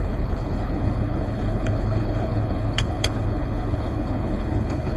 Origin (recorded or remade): remade